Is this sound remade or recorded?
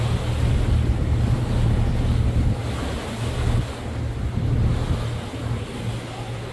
recorded